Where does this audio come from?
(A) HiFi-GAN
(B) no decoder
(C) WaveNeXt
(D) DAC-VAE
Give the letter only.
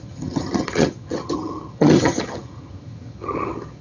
A